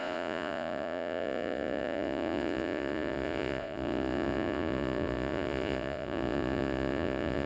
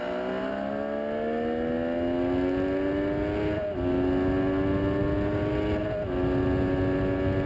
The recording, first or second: second